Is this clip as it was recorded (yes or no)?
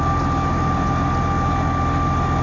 yes